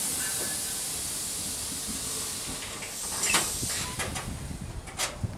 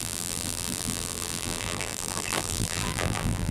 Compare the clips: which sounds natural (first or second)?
first